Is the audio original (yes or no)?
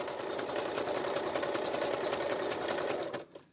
no